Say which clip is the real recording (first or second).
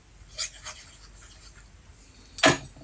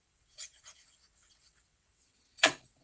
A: first